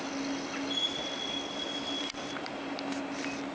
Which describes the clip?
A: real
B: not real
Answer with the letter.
A